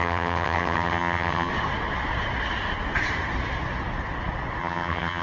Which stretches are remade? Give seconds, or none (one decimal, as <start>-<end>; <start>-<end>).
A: 0.0-1.5; 4.6-5.2